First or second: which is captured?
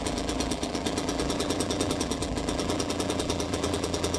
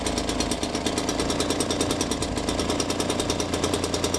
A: second